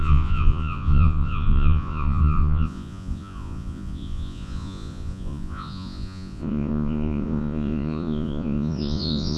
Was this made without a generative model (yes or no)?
no